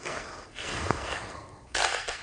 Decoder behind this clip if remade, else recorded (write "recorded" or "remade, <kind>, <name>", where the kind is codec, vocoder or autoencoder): remade, codec, SNAC